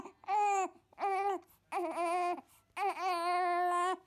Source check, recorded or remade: recorded